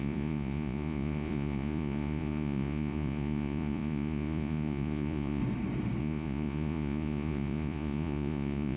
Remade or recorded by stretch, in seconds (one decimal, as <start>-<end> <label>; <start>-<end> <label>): 0.0-5.4 remade; 5.4-6.0 recorded; 6.0-8.8 remade